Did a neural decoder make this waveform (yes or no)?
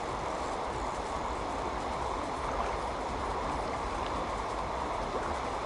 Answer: no